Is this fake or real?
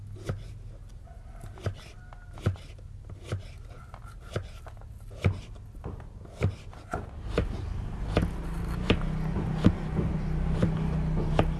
real